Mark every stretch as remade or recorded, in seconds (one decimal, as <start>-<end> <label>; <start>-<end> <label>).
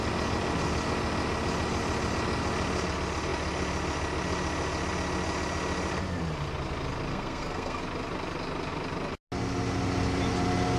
0.0-7.1 recorded; 7.1-7.8 remade; 7.8-10.8 recorded